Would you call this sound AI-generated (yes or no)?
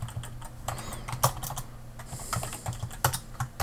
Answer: no